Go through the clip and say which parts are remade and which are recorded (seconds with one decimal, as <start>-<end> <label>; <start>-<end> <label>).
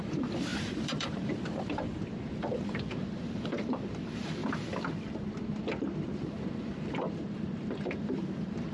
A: 0.0-4.4 remade; 4.4-6.3 recorded; 6.3-8.7 remade